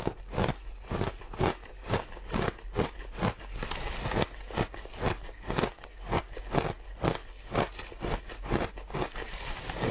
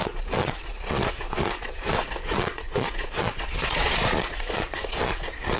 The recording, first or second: first